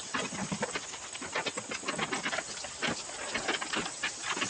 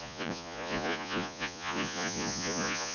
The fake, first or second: second